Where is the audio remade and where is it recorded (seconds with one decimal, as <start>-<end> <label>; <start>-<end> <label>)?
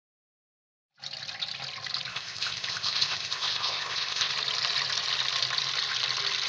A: 0.0-2.1 recorded; 2.1-4.3 remade; 4.3-6.5 recorded